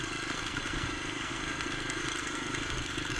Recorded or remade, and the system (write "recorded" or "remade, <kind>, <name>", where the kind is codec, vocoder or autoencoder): remade, codec, SNAC